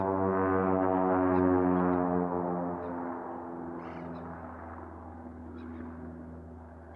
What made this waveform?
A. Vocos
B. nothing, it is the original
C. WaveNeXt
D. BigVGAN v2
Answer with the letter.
B